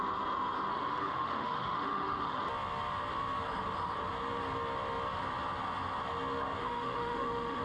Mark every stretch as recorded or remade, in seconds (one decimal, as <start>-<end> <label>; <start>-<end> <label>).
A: 0.0-0.7 recorded; 0.7-2.4 remade; 2.4-6.6 recorded; 6.6-7.6 remade